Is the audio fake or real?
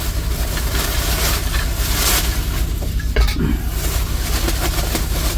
real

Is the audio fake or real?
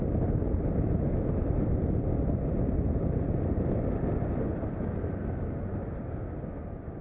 real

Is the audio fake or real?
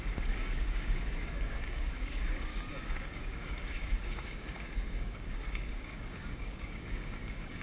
fake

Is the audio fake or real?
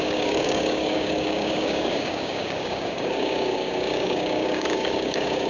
fake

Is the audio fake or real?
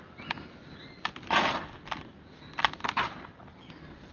real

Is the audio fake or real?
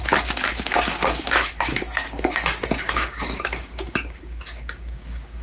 fake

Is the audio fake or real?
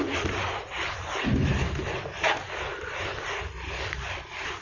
real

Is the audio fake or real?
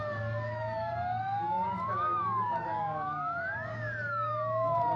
fake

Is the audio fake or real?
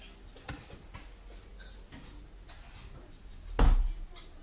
real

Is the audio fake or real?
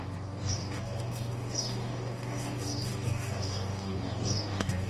fake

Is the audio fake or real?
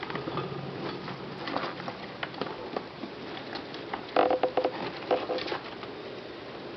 real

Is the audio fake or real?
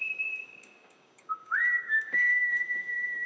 fake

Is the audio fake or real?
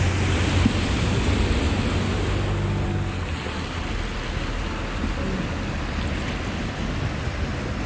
real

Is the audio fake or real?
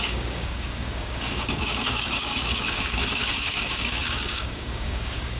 fake